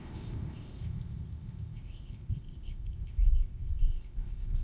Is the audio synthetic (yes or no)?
yes